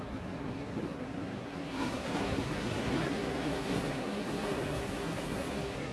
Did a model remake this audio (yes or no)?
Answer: yes